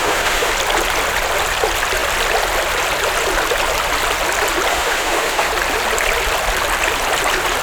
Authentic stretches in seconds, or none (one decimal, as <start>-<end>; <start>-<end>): 0.5-4.7; 5.5-7.6